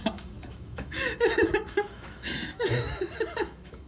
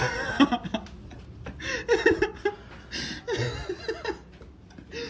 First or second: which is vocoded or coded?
first